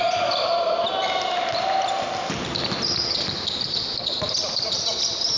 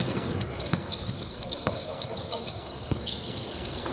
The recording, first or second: first